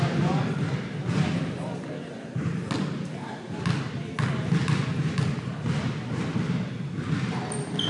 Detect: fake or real real